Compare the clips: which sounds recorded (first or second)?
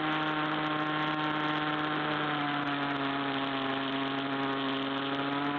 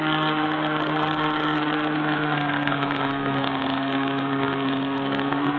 first